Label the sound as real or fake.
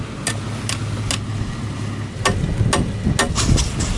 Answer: real